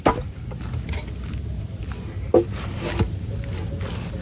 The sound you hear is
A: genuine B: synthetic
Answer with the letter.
A